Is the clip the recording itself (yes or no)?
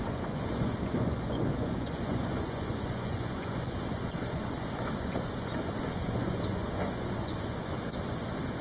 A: no